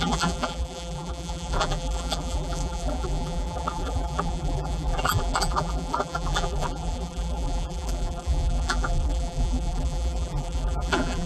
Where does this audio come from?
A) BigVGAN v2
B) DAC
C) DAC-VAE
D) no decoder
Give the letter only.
A